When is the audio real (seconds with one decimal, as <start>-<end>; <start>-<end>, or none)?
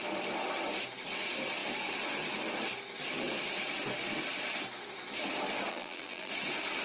0.0-5.7; 6.3-6.8